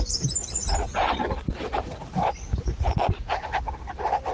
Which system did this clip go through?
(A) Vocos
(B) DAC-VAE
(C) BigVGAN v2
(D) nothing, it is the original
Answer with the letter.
D